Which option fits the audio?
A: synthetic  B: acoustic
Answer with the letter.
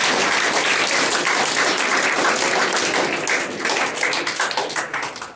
B